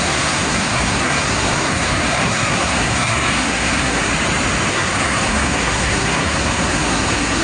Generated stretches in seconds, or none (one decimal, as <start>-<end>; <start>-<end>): 0.0-4.1; 4.7-7.4